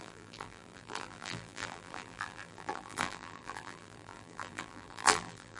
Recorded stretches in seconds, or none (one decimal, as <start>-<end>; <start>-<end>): none